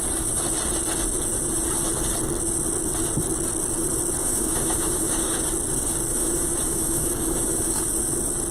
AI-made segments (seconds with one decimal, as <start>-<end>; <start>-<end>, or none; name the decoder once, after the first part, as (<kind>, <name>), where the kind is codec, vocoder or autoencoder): 4.2-5.4 (autoencoder, DAC-VAE); 6.1-7.8